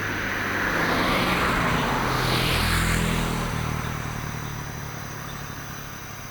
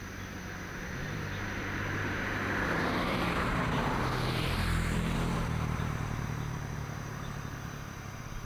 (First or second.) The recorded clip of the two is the first